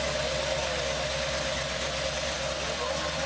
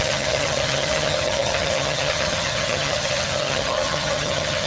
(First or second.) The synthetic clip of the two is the second